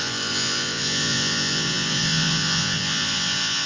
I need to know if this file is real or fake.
fake